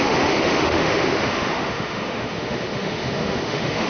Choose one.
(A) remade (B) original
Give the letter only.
A